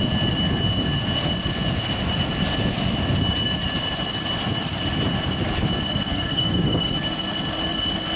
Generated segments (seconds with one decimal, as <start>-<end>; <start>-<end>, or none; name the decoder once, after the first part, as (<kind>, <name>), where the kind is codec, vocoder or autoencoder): 6.1-6.9 (codec, DAC)